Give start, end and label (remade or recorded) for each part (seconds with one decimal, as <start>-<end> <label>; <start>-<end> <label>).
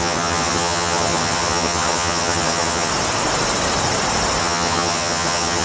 0.0-2.9 remade; 2.9-4.4 recorded; 4.4-5.6 remade